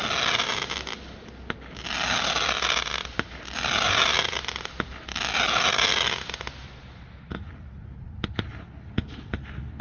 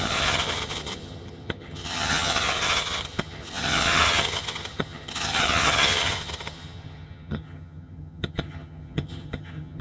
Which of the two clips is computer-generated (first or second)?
second